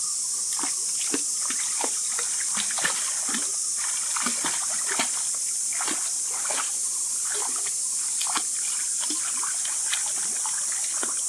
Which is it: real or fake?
real